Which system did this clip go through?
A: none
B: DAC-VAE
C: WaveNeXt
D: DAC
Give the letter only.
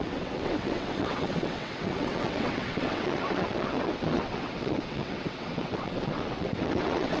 C